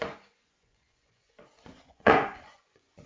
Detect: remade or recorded remade